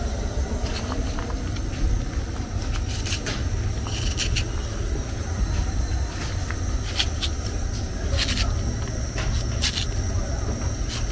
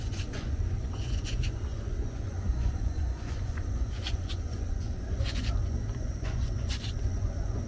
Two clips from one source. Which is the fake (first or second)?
second